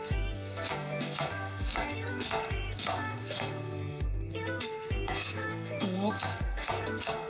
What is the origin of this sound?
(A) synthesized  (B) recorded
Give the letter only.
A